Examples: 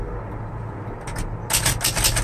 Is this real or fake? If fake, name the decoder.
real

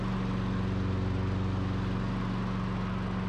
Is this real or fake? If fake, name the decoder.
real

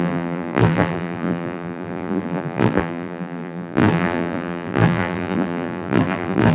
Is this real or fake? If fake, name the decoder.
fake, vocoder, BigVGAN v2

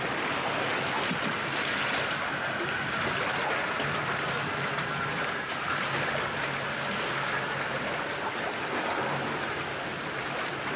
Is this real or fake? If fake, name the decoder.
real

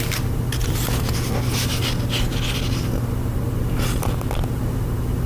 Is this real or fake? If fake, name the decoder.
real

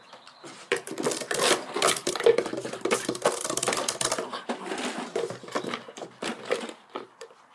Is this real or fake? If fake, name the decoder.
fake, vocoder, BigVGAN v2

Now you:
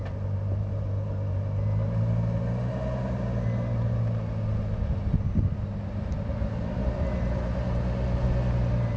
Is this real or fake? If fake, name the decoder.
real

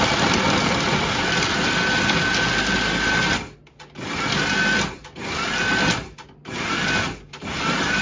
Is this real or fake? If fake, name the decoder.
real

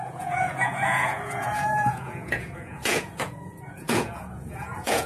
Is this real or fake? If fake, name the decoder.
fake, vocoder, Vocos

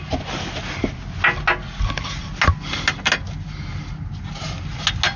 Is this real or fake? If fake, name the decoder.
real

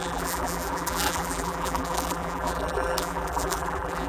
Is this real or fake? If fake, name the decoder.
fake, vocoder, BigVGAN v2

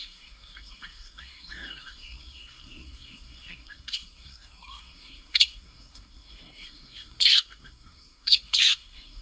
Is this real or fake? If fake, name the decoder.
fake, codec, SNAC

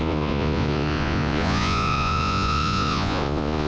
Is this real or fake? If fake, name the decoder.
fake, vocoder, Vocos